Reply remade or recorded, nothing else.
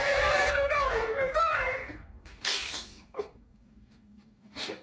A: remade